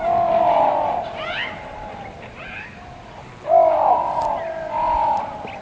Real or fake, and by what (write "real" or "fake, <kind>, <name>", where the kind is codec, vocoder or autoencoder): real